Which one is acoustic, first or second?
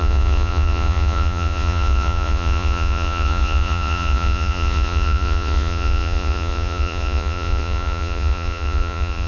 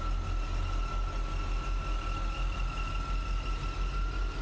second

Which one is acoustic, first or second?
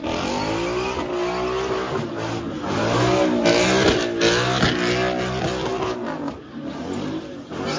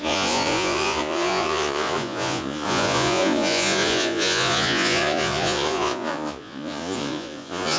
first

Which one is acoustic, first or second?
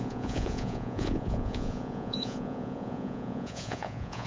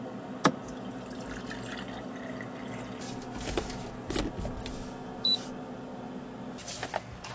second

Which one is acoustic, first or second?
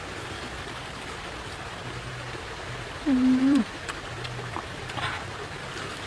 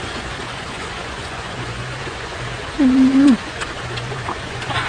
first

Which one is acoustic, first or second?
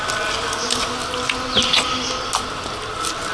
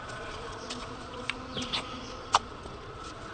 first